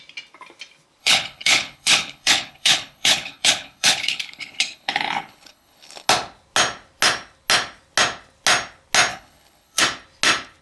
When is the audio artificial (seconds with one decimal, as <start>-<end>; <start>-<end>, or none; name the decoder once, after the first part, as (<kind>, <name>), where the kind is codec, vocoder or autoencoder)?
1.0-6.1 (codec, HILCodec); 9.1-9.8